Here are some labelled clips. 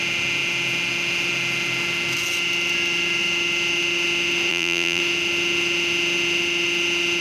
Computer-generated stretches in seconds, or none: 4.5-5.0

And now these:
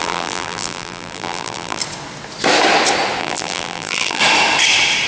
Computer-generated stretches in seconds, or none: 0.0-1.8; 3.2-4.2

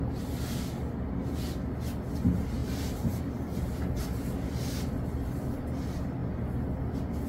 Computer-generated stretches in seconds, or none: 2.6-3.2

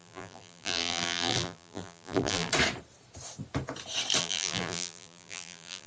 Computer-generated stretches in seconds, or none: 0.0-2.5; 4.2-5.9